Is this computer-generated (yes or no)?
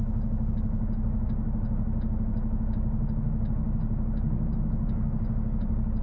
no